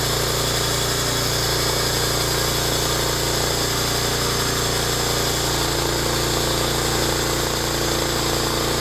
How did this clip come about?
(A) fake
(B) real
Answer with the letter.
B